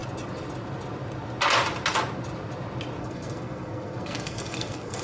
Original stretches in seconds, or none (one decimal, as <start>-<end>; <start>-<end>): 0.0-3.0